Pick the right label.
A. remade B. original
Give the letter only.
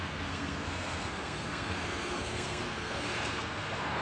A